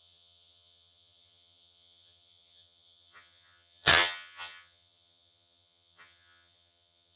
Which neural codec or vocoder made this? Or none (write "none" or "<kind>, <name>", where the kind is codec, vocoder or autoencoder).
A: vocoder, HiFi-GAN